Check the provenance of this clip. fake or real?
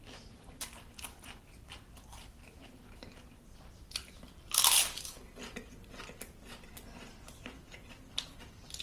fake